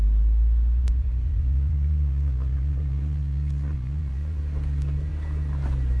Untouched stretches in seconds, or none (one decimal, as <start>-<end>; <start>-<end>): 0.0-0.8; 4.4-6.0